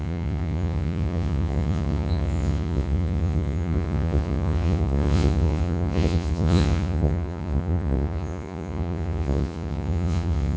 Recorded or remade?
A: remade